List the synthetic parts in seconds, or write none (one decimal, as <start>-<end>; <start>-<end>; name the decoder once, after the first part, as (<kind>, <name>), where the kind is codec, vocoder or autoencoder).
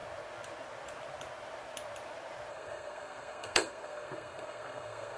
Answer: 2.5-5.2 (codec, SNAC)